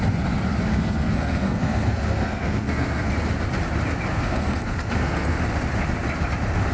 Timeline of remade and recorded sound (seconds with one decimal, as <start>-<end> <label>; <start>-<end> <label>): 0.0-0.7 recorded; 0.7-3.1 remade; 3.1-4.1 recorded; 4.1-5.4 remade; 5.4-6.7 recorded